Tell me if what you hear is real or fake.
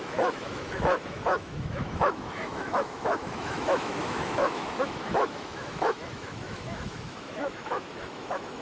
fake